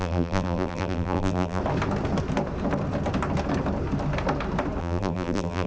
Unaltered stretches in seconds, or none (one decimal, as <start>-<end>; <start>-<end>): 1.6-4.8